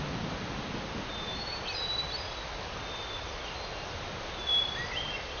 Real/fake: real